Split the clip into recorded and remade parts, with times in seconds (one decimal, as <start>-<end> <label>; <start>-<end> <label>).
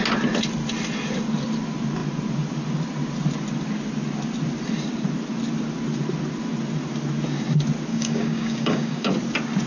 0.0-7.9 recorded; 7.9-9.1 remade; 9.1-9.7 recorded